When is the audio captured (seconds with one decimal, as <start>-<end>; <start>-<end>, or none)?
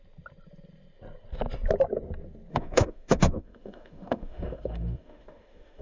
0.0-2.5